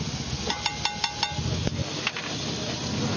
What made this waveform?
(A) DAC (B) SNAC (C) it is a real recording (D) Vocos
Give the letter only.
C